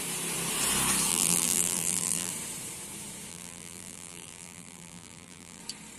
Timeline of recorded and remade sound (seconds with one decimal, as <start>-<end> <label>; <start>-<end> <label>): 0.0-1.1 recorded; 1.1-2.3 remade; 2.3-3.3 recorded; 3.3-5.6 remade; 5.6-6.0 recorded